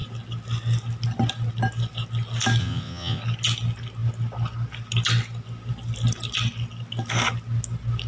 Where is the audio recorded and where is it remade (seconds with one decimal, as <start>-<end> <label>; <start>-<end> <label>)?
0.0-2.6 recorded; 2.6-3.2 remade; 3.2-8.1 recorded